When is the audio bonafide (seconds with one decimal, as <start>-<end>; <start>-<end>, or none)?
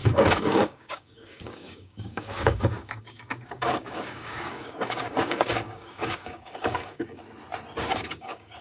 7.2-7.8